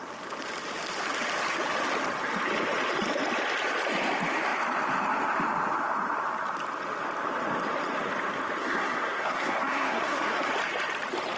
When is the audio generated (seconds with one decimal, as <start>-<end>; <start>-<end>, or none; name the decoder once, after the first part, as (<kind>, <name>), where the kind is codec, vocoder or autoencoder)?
8.6-10.5 (codec, SNAC)

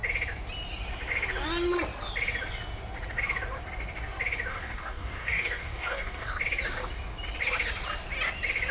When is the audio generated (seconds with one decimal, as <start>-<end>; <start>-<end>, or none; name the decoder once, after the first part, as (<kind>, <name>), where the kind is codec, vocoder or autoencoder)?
4.5-6.4 (codec, DAC)